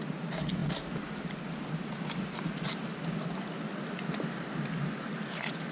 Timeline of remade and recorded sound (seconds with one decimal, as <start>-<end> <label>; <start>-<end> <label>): 0.0-5.7 recorded